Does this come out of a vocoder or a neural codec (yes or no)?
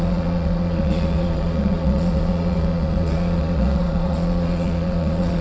yes